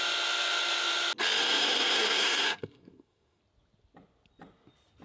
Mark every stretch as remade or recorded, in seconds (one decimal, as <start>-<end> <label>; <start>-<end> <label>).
0.0-1.4 recorded; 1.4-3.4 remade; 3.4-5.0 recorded